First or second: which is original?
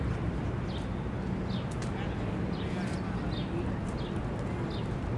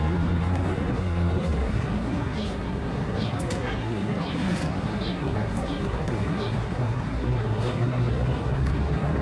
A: first